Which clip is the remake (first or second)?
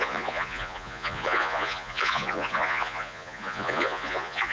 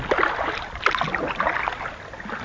first